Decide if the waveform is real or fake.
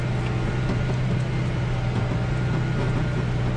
real